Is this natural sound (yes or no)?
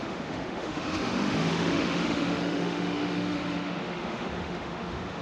no